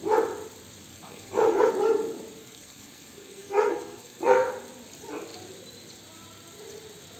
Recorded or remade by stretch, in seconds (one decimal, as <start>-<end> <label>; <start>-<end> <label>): 0.0-0.9 recorded; 0.9-1.7 remade; 1.7-2.4 recorded; 2.4-4.5 remade; 4.5-7.2 recorded